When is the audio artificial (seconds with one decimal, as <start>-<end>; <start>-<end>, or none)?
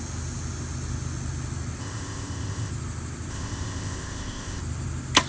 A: 1.8-2.7; 3.3-4.6